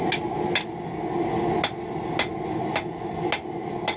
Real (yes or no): yes